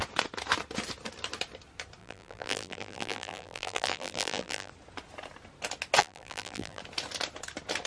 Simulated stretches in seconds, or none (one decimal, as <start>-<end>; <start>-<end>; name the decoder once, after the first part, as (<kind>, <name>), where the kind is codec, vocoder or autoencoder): 2.0-4.7 (vocoder, BigVGAN v2); 6.0-6.8